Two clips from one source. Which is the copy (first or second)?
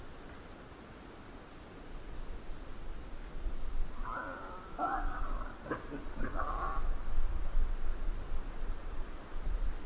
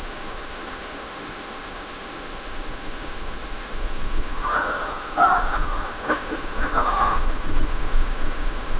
second